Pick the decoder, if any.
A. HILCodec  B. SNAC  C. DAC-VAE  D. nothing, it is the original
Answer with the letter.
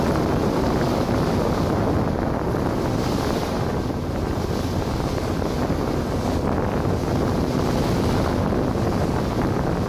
D